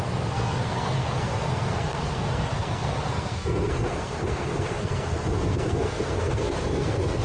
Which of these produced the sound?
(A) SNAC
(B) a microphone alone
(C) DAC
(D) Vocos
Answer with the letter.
A